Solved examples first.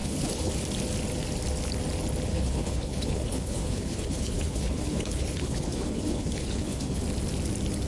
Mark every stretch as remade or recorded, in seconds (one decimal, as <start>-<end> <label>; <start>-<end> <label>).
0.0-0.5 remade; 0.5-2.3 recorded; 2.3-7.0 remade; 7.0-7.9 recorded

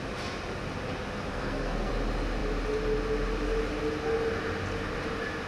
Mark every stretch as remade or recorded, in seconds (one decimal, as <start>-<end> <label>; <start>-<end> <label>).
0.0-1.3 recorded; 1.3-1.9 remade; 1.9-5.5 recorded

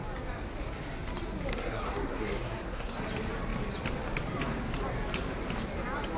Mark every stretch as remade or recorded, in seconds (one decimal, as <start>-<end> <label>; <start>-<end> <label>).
0.0-1.5 recorded; 1.5-3.0 remade; 3.0-6.2 recorded